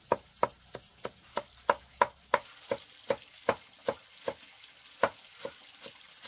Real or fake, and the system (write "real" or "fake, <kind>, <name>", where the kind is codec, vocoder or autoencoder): real